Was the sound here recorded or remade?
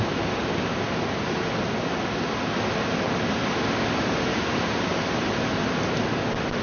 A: recorded